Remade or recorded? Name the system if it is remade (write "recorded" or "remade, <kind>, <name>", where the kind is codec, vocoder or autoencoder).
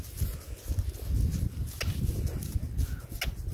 recorded